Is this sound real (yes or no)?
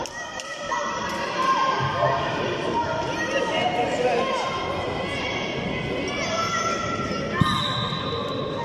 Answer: yes